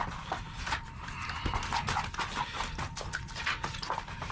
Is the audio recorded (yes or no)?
yes